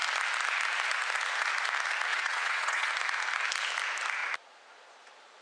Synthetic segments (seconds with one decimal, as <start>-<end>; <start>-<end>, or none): 2.1-2.9

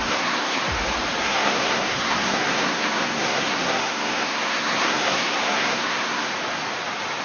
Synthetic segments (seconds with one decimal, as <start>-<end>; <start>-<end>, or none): 0.0-0.6; 1.2-6.3

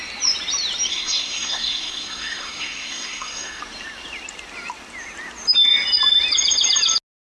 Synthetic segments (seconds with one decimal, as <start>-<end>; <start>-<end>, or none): 0.9-3.6

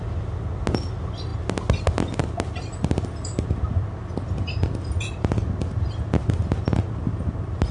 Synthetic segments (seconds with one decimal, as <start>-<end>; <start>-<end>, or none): none

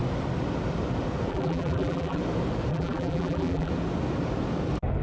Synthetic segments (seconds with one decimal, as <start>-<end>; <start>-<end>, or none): 1.3-2.2; 2.7-3.7